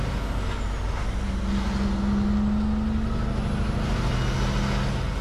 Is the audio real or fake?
real